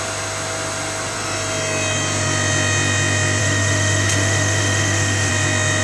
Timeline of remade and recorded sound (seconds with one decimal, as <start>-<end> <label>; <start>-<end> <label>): 0.0-3.4 recorded; 3.4-5.3 remade; 5.3-5.8 recorded